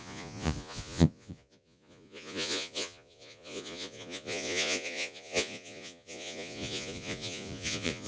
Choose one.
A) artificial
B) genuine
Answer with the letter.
A